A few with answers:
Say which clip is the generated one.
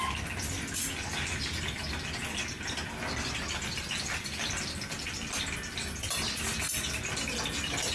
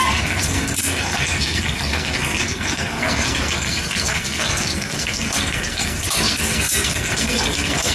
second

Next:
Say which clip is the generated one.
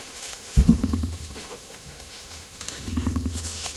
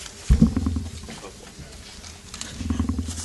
first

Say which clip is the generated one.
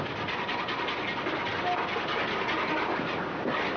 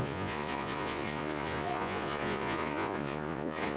second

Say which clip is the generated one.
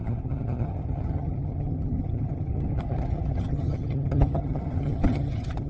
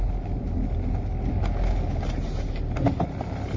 first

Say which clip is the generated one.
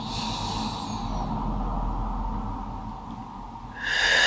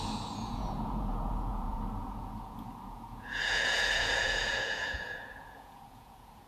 second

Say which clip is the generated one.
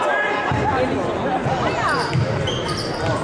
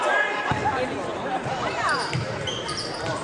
second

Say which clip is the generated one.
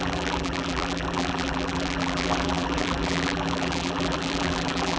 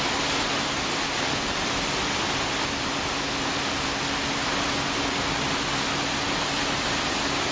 first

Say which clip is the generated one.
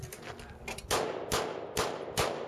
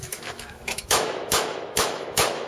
second